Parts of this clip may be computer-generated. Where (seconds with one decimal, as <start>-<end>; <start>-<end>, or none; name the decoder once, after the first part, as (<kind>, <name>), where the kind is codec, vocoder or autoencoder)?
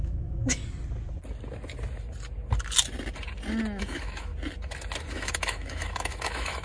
0.0-0.6 (autoencoder, DAC-VAE); 3.8-4.3; 5.1-6.6